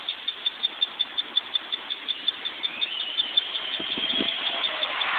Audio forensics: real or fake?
fake